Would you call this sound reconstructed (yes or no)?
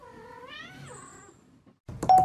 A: no